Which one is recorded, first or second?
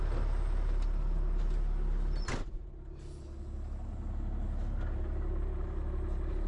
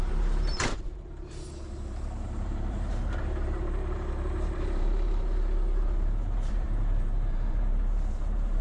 first